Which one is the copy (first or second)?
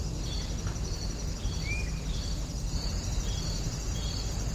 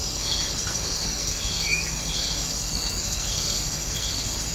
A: second